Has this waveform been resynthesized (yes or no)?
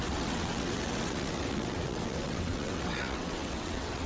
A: yes